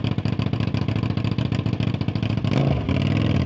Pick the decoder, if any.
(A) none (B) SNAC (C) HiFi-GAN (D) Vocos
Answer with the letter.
A